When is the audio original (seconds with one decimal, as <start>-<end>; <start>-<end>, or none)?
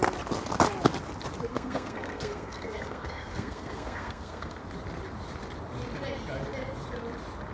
0.0-1.5; 4.6-7.5